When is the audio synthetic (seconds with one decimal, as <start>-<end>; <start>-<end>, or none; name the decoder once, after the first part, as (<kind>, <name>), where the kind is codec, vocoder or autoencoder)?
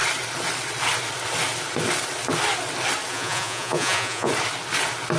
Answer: 3.1-4.3 (vocoder, Vocos)